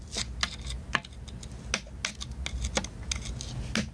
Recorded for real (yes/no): yes